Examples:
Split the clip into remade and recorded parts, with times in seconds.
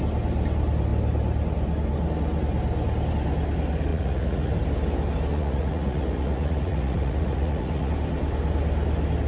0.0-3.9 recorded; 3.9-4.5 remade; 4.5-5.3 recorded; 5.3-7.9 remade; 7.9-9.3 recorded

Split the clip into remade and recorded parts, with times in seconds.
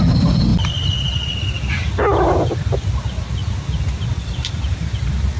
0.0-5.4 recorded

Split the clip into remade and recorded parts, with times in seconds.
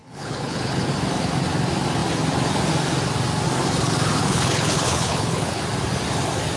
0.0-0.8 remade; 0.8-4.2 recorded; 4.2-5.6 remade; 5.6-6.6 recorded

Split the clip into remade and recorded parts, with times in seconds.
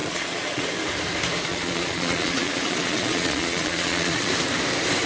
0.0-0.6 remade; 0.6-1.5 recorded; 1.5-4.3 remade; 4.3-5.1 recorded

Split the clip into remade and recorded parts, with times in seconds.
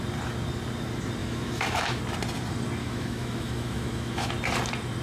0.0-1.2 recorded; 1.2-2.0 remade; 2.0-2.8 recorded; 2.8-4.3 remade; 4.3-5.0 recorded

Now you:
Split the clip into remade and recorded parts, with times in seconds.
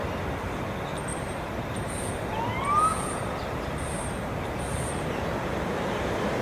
0.0-1.1 recorded; 1.1-2.1 remade; 2.1-2.9 recorded; 2.9-6.4 remade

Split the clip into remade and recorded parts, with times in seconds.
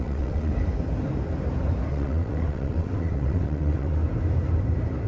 0.0-0.5 remade; 0.5-1.9 recorded; 1.9-4.0 remade; 4.0-5.1 recorded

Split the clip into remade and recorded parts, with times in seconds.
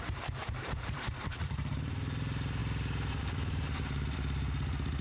0.0-2.6 remade; 2.6-3.2 recorded; 3.2-5.0 remade